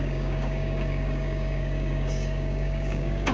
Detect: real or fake fake